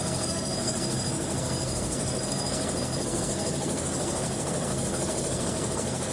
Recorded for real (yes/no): no